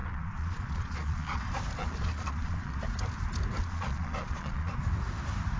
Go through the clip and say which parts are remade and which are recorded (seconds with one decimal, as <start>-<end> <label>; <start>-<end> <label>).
0.0-1.4 remade; 1.4-1.8 recorded; 1.8-2.8 remade; 2.8-3.6 recorded; 3.6-4.7 remade; 4.7-5.6 recorded